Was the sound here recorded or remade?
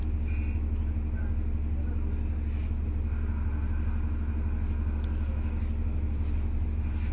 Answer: recorded